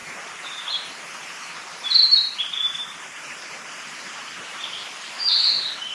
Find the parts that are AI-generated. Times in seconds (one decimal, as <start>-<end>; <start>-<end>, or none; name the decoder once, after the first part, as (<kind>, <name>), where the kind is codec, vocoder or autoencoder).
0.0-5.9 (vocoder, BigVGAN v2)